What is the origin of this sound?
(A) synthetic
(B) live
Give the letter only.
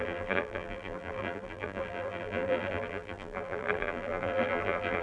A